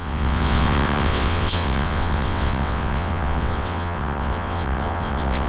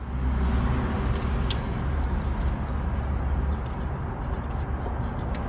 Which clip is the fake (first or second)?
first